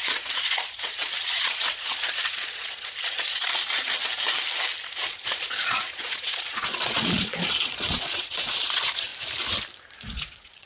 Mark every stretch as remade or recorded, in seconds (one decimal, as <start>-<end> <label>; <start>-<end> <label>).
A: 0.0-4.1 remade; 4.1-4.8 recorded; 4.8-9.1 remade; 9.1-10.0 recorded; 10.0-10.7 remade